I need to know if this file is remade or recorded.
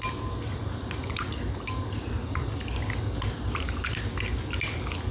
recorded